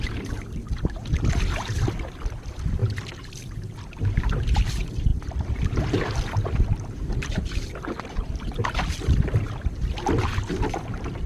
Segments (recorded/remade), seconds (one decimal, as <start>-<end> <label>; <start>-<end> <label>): 0.0-11.3 recorded